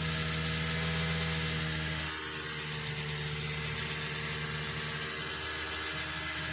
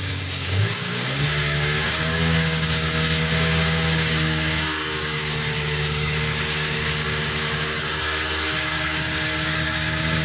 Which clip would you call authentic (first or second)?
first